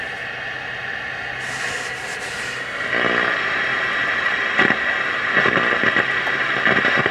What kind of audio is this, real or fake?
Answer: real